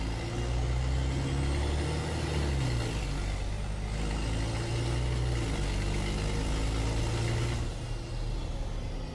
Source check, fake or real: real